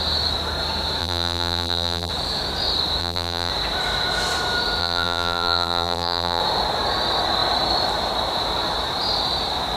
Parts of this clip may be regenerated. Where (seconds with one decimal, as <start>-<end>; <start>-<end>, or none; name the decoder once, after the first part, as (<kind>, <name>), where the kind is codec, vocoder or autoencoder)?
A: 1.0-2.1 (vocoder, BigVGAN v2); 3.0-3.5; 4.8-6.4